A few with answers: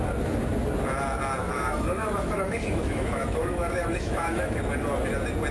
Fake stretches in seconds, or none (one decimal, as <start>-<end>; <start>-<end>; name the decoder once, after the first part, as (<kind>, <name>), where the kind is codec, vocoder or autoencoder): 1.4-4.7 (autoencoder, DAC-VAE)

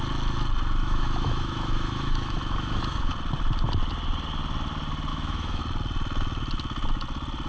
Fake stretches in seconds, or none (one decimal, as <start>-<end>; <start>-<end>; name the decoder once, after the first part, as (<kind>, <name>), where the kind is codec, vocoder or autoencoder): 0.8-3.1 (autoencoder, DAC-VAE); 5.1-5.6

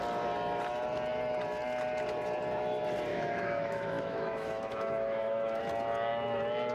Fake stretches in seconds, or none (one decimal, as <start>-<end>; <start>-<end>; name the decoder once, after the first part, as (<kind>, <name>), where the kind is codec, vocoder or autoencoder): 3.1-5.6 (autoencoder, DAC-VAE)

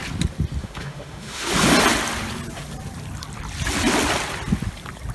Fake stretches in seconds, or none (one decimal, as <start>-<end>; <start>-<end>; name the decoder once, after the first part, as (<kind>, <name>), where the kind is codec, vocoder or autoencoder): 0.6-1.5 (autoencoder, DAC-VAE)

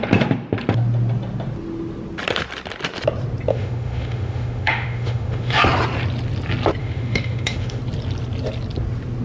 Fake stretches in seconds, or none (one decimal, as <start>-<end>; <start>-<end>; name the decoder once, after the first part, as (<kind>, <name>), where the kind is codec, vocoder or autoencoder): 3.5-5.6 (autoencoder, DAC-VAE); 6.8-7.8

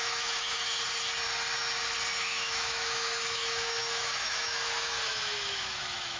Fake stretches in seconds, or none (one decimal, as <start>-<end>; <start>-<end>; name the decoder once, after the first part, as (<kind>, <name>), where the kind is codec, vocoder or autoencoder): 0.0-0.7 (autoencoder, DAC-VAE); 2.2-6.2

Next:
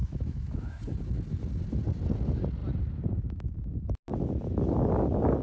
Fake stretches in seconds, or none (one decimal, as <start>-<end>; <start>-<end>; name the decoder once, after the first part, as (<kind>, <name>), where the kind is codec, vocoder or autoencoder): 0.0-0.8 (autoencoder, DAC-VAE)